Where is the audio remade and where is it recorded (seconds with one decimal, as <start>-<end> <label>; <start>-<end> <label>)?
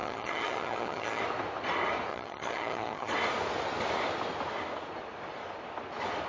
0.0-1.2 remade; 1.2-2.1 recorded; 2.1-3.1 remade; 3.1-6.3 recorded